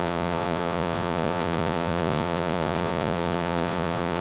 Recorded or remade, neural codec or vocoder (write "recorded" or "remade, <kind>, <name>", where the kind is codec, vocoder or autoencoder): remade, vocoder, Vocos